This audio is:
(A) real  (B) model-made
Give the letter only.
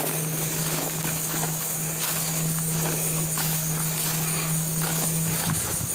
B